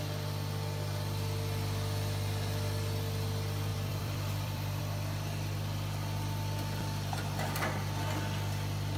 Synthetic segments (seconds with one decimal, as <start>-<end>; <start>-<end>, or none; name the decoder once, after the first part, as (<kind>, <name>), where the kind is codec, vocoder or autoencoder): 3.7-4.8 (vocoder, BigVGAN v2)

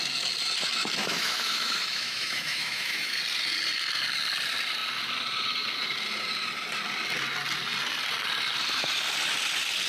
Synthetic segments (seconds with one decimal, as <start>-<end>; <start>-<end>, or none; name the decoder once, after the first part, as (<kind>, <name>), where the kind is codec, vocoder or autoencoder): 1.0-3.2 (autoencoder, DAC-VAE)